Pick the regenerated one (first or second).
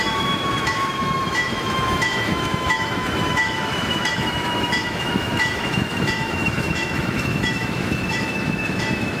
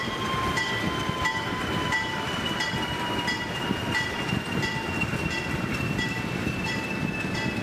first